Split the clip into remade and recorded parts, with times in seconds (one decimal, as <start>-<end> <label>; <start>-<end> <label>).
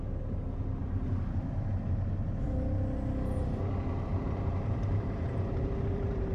0.0-0.8 recorded; 0.8-2.1 remade; 2.1-4.1 recorded; 4.1-6.3 remade